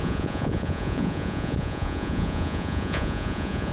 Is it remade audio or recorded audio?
remade